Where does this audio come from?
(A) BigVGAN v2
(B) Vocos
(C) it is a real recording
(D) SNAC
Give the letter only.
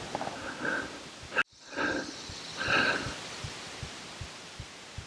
C